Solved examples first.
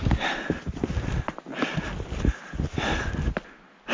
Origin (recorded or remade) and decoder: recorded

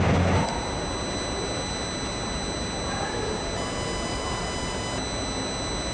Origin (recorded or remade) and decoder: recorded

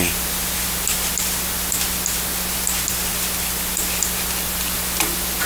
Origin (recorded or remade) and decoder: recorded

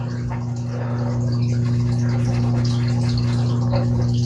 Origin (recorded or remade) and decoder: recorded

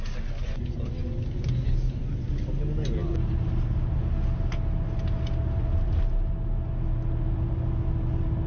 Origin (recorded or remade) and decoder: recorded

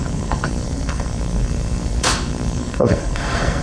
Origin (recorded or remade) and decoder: remade, codec, SNAC